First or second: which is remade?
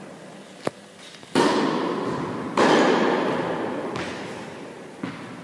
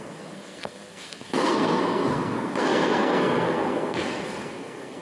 second